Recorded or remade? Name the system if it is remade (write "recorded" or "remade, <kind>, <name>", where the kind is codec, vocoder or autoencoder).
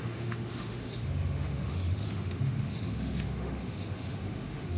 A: remade, autoencoder, DAC-VAE